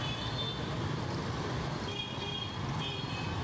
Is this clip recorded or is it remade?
recorded